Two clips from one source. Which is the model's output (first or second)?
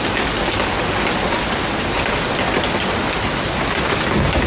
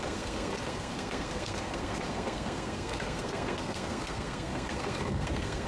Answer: second